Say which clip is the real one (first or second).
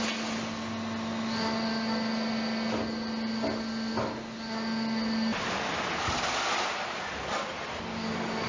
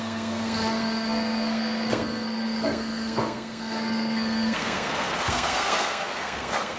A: first